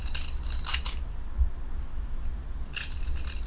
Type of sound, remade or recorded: recorded